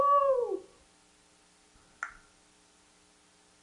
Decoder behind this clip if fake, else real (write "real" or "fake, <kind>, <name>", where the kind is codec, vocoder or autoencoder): real